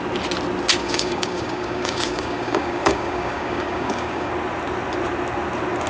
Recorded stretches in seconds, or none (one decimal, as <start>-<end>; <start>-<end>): 0.0-0.8; 4.3-5.9